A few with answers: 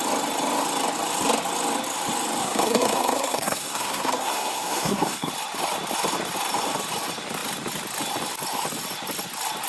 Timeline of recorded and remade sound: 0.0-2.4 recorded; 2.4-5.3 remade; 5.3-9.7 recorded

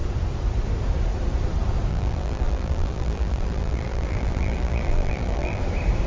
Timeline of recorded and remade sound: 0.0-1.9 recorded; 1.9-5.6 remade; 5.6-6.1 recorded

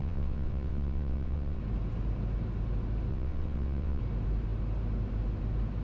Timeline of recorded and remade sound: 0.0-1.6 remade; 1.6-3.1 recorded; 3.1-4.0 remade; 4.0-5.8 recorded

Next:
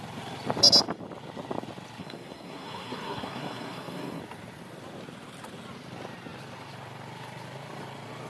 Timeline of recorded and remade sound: 0.0-2.0 recorded; 2.0-4.2 remade; 4.2-8.3 recorded